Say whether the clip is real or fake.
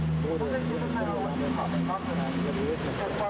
real